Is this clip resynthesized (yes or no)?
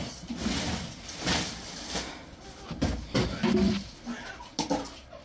no